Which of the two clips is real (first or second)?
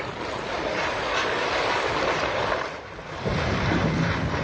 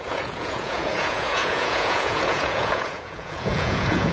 first